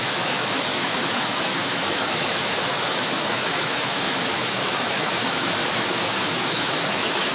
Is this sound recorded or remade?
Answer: remade